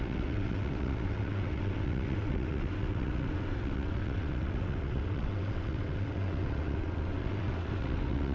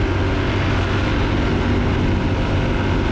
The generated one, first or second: first